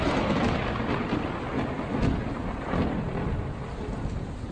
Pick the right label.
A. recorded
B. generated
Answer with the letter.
A